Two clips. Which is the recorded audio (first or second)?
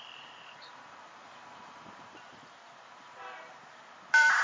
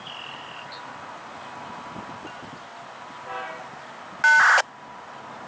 second